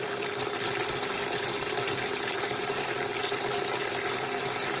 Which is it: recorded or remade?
recorded